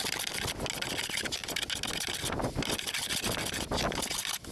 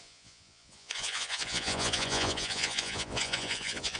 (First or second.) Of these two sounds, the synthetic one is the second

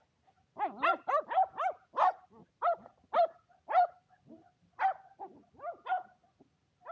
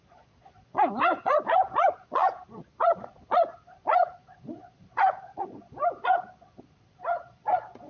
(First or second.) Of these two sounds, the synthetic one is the second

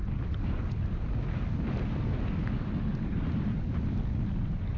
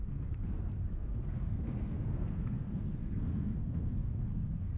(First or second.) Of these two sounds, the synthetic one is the second